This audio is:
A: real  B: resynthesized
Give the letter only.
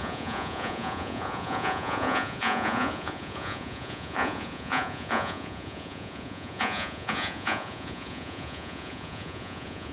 B